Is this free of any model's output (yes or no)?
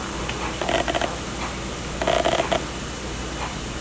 yes